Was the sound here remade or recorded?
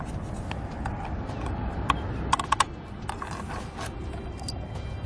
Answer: recorded